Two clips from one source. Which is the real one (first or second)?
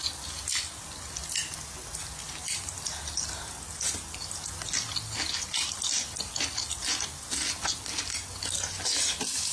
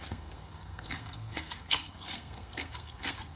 first